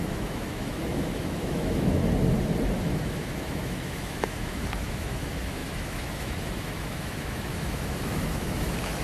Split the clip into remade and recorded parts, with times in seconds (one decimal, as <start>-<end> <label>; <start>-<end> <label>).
0.0-2.0 remade; 2.0-2.8 recorded; 2.8-9.0 remade